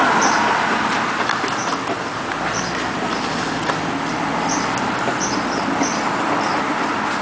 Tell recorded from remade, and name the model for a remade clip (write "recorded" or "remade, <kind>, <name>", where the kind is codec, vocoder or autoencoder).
recorded